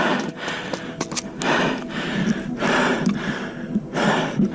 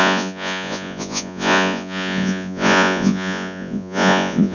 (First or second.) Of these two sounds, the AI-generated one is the second